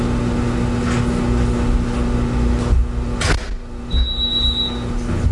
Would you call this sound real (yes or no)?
yes